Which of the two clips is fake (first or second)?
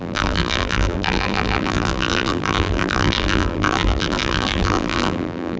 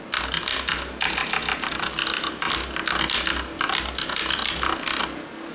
first